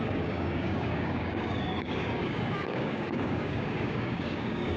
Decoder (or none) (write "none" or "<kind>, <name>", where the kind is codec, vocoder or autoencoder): codec, DAC